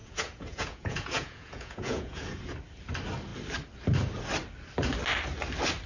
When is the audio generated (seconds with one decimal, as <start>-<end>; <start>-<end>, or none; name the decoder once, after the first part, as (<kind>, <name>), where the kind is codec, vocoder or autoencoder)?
0.0-2.4 (vocoder, Vocos)

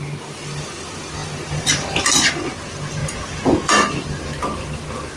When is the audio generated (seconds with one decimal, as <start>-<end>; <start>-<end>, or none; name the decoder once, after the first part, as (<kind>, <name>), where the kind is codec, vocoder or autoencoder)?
0.0-3.0 (vocoder, BigVGAN v2); 3.6-5.2

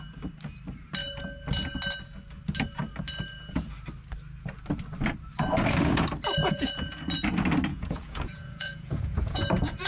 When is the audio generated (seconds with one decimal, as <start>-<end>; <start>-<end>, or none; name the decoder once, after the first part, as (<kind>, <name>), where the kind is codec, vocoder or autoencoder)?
6.4-7.0 (vocoder, Vocos); 7.7-9.5

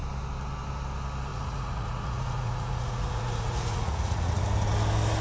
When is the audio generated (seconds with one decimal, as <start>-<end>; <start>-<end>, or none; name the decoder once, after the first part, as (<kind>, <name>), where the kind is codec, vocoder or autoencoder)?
1.3-4.4 (vocoder, Vocos)

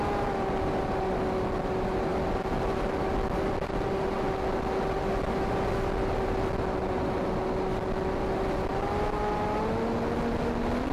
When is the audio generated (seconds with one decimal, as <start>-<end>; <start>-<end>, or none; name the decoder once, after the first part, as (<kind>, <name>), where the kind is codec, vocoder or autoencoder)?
none

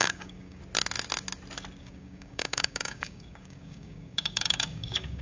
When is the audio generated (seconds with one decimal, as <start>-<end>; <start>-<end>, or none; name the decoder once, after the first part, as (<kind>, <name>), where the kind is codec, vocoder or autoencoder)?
0.0-0.6 (codec, DAC); 1.8-5.2